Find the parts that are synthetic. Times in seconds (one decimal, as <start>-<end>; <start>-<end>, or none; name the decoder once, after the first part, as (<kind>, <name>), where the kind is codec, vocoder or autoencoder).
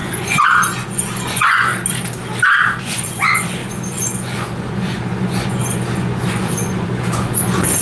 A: 0.0-1.7 (vocoder, Vocos); 2.8-7.8